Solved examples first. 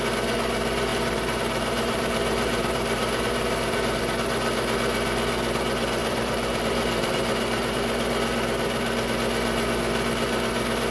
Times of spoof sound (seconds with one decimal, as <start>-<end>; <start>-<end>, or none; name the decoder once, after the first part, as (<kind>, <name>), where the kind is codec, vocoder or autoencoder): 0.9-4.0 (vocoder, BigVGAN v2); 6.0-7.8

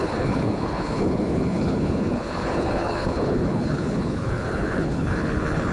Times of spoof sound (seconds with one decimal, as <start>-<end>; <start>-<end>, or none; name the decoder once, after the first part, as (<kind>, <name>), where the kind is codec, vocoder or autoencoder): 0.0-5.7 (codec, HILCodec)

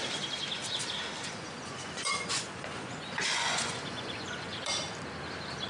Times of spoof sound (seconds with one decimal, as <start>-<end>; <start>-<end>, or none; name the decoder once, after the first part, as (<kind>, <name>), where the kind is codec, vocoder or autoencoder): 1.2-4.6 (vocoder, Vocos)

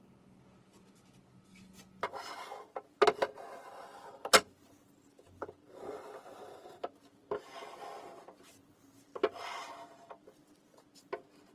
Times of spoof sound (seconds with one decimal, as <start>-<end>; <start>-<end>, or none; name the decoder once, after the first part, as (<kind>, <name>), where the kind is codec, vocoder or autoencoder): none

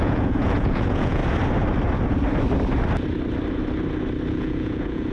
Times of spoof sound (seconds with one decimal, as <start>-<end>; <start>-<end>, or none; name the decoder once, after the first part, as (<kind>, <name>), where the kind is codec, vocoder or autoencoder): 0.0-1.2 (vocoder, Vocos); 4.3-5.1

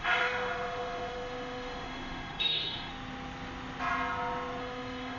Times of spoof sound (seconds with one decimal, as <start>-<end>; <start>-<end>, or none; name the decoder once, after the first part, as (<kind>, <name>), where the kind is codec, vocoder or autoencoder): 0.0-2.9 (autoencoder, DAC-VAE); 4.6-5.2